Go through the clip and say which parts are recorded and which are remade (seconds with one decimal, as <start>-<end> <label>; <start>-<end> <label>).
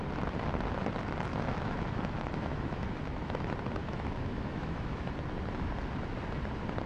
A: 0.0-1.3 recorded; 1.3-3.4 remade; 3.4-3.8 recorded; 3.8-5.1 remade; 5.1-6.9 recorded